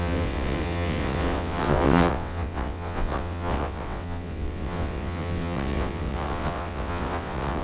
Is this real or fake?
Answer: fake